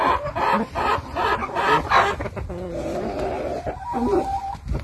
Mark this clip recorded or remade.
recorded